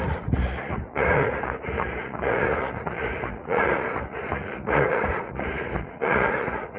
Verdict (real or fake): fake